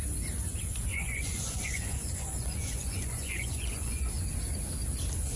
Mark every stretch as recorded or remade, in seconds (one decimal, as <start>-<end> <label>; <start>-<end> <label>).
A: 0.0-0.9 recorded; 0.9-4.1 remade; 4.1-5.4 recorded